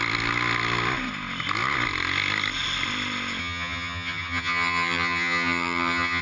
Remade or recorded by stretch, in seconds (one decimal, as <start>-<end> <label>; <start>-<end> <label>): 0.0-3.4 recorded; 3.4-6.2 remade